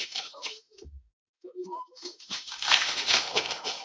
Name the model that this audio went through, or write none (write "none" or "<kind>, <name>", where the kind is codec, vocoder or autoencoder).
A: autoencoder, DAC-VAE